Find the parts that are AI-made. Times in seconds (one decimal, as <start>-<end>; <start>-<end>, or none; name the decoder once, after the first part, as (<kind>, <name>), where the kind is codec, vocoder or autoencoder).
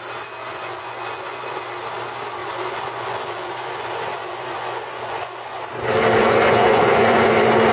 0.4-1.6 (vocoder, Vocos); 2.4-5.6; 6.2-7.3